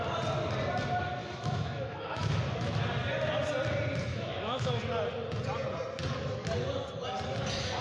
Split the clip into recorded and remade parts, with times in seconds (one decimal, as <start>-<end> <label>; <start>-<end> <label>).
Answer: 0.0-1.2 recorded; 1.2-2.4 remade; 2.4-4.1 recorded; 4.1-4.8 remade; 4.8-7.8 recorded